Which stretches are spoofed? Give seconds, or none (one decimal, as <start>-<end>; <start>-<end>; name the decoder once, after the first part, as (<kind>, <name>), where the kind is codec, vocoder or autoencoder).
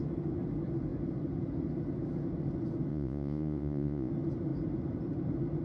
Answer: 2.9-4.1 (vocoder, Vocos)